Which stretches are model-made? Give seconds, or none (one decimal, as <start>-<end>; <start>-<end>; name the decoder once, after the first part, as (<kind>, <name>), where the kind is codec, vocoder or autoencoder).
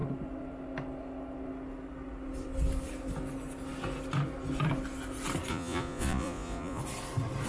5.5-6.8 (vocoder, Vocos)